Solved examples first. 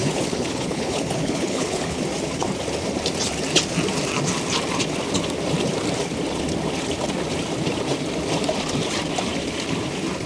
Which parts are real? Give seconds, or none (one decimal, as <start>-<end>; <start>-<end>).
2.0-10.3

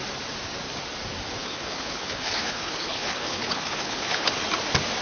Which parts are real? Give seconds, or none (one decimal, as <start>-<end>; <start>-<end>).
0.0-1.4; 4.4-5.0

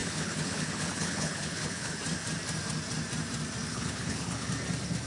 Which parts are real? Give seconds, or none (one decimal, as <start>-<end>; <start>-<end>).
2.0-3.7; 4.5-5.1

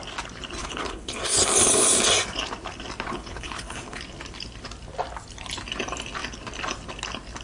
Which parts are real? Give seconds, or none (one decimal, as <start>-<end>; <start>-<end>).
0.0-0.6; 1.2-3.1; 4.0-7.4

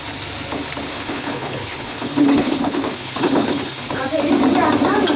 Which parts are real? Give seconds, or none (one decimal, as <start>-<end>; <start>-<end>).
0.0-0.9; 4.0-5.2

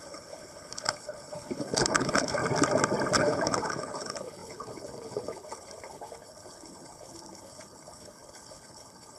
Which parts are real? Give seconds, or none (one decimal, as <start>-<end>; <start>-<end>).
2.4-3.2